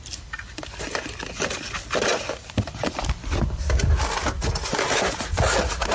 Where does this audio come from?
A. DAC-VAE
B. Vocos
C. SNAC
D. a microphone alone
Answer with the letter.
D